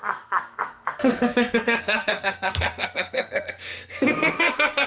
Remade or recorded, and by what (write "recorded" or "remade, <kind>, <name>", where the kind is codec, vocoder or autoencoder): remade, codec, SNAC